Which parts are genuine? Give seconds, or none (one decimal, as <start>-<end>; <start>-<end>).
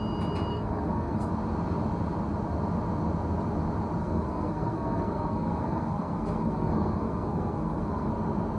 0.0-0.5; 1.3-4.0; 8.1-8.6